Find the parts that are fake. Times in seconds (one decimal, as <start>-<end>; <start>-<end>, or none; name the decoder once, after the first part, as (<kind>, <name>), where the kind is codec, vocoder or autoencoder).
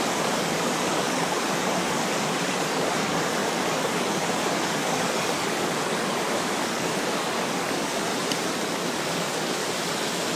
0.0-8.1 (codec, DAC); 9.0-9.6